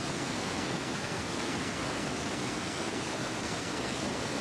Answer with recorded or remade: remade